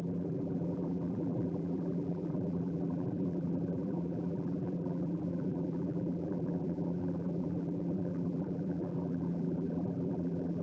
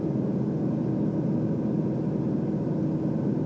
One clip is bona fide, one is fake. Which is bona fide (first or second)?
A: second